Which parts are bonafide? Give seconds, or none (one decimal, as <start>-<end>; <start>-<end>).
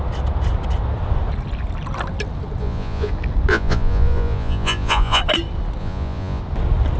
0.0-2.6; 3.1-3.5; 5.2-5.8; 6.4-7.0